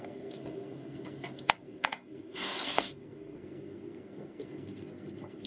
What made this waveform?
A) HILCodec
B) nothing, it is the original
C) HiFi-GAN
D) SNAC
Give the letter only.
D